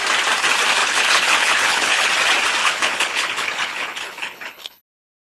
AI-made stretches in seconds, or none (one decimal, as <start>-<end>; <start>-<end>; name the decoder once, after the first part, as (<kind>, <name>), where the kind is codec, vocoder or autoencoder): 0.8-2.1 (codec, HILCodec); 2.6-4.8